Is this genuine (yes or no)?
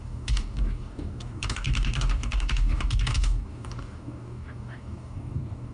no